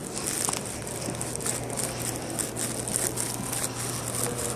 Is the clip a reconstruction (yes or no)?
no